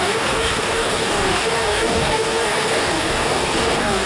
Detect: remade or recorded remade